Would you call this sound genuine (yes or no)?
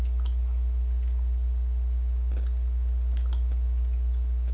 yes